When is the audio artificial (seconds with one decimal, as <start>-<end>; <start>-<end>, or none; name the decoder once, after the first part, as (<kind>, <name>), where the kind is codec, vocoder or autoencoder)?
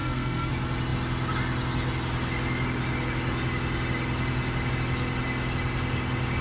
0.0-0.5 (codec, SNAC)